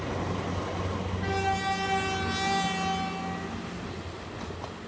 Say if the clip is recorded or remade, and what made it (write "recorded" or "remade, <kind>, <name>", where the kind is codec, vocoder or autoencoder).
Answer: recorded